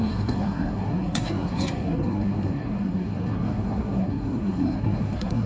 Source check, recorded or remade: remade